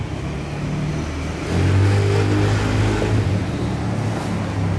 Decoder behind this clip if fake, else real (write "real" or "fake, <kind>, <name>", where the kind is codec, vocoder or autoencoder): real